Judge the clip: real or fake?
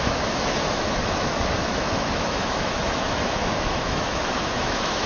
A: fake